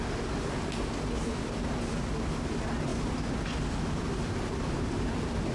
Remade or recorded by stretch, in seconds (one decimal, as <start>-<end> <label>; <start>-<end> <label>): 0.0-5.5 recorded